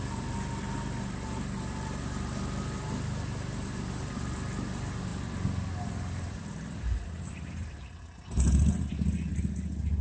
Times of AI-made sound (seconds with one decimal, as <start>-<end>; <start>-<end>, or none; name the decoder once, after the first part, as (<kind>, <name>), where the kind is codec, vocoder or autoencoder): none